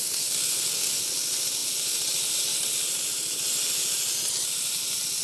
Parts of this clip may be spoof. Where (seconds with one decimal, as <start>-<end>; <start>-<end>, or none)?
0.0-0.9